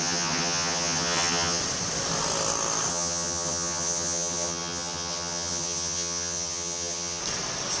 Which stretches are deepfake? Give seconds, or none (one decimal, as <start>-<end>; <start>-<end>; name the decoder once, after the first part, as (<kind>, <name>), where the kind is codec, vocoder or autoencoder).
0.0-1.6 (vocoder, HiFi-GAN); 2.9-7.2